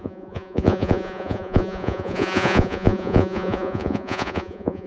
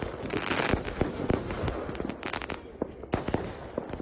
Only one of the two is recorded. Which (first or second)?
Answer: second